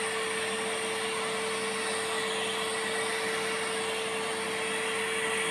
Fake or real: real